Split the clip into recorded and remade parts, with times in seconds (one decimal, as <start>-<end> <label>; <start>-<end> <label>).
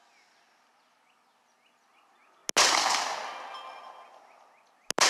0.0-5.1 recorded